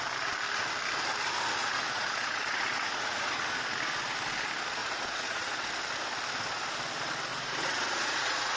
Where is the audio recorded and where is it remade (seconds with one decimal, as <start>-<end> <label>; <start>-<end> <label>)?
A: 0.0-1.6 recorded; 1.6-3.4 remade; 3.4-4.8 recorded; 4.8-5.7 remade; 5.7-7.3 recorded; 7.3-8.6 remade